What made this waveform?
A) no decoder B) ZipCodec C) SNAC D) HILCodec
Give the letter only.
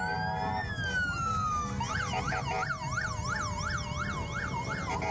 A